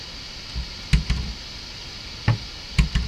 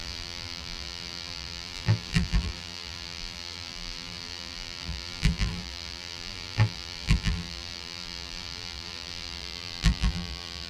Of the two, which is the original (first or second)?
first